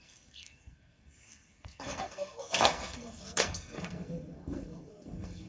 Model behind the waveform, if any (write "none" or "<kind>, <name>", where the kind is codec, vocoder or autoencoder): codec, SNAC